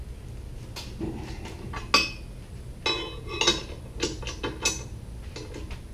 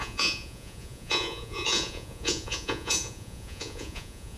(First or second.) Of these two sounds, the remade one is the second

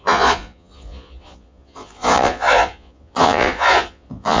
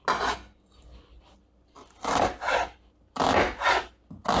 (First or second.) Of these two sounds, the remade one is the first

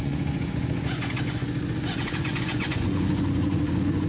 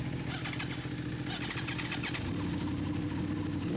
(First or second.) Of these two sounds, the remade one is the first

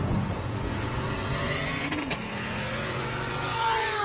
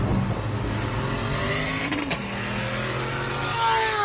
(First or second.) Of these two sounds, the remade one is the first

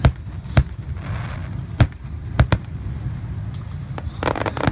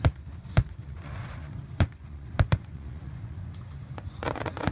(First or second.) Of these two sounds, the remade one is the second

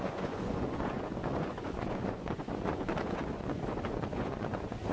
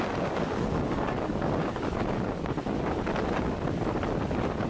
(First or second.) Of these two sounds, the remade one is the first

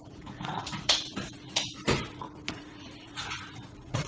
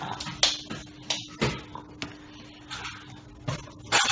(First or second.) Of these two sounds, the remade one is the first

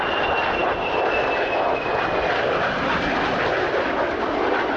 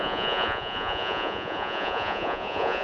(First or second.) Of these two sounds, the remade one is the second